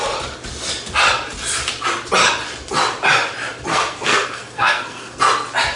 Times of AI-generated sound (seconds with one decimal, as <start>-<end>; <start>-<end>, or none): 3.7-5.2